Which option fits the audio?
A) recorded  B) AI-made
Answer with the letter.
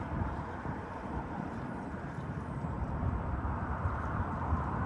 B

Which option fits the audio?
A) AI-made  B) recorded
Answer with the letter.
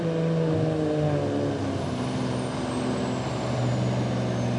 B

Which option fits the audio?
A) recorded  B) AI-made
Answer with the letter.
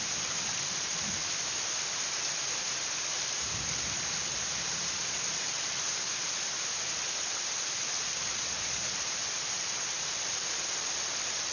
B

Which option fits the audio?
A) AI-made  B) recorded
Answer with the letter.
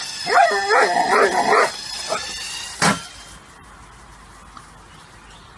B